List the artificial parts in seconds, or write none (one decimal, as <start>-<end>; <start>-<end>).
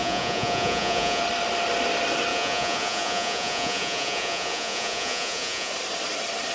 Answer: 0.0-1.2; 2.3-5.7